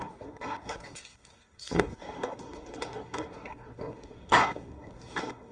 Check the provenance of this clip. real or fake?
fake